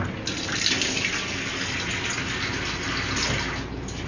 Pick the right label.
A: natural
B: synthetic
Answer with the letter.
A